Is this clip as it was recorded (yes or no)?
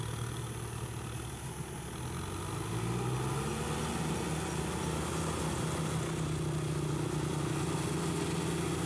yes